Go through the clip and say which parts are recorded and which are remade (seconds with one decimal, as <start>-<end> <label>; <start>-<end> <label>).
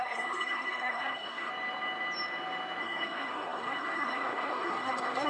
0.0-1.5 remade; 1.5-2.8 recorded; 2.8-5.3 remade